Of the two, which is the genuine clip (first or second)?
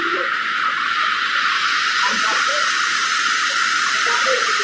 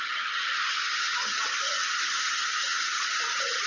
first